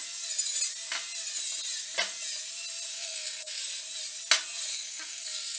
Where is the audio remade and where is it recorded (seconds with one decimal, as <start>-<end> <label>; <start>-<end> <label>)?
0.0-2.9 recorded; 2.9-3.6 remade; 3.6-4.7 recorded; 4.7-5.6 remade